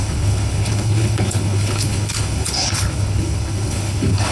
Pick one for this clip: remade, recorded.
remade